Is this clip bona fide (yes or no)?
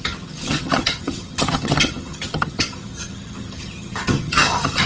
no